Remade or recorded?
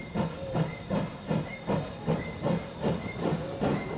recorded